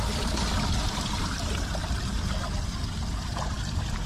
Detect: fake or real real